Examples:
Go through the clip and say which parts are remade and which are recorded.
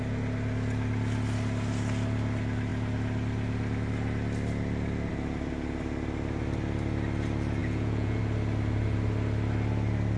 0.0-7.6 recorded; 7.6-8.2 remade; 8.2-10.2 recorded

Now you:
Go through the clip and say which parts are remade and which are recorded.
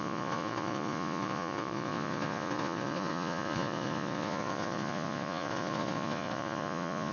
0.0-7.1 remade